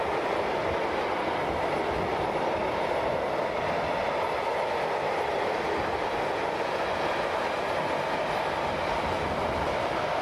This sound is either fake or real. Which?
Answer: real